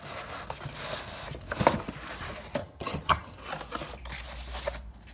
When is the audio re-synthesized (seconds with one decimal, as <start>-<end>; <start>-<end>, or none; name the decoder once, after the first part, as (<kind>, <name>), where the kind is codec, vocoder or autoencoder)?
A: 2.6-3.4 (vocoder, HiFi-GAN)